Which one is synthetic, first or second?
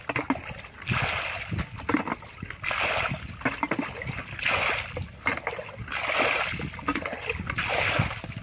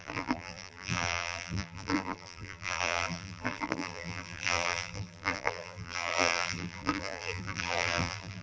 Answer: second